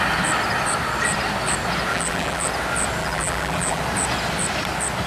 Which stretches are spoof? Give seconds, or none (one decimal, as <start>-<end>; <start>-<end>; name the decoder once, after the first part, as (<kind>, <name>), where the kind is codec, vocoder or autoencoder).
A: 1.9-2.5 (vocoder, BigVGAN v2); 3.0-3.8